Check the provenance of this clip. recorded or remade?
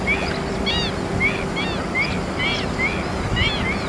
recorded